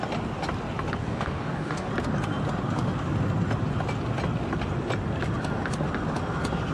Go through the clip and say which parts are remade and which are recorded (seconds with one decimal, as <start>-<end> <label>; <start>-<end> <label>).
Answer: 0.0-1.0 recorded; 1.0-1.9 remade; 1.9-6.7 recorded